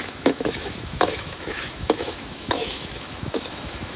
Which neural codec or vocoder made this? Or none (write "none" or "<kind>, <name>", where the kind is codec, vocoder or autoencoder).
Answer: autoencoder, DAC-VAE